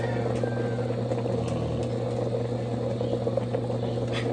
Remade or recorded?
recorded